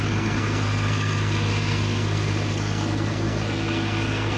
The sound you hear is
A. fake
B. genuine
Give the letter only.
A